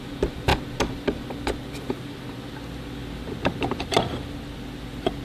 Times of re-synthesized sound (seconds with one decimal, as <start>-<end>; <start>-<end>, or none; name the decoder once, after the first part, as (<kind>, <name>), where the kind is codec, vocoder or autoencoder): none